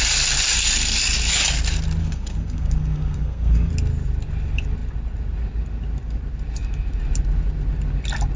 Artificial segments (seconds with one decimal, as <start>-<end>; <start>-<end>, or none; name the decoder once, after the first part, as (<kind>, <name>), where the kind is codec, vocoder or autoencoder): 2.0-3.7 (codec, SNAC)